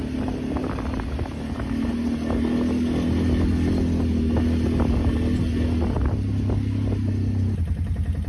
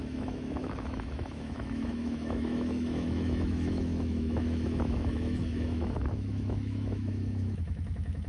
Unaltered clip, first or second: first